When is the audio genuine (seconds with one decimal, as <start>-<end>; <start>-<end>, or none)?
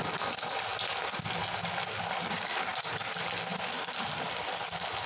0.0-5.1